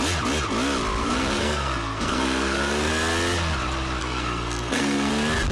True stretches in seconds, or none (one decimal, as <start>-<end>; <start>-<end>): 0.0-1.0; 2.9-4.0; 5.1-5.5